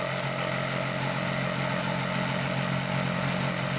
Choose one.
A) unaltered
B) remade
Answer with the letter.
A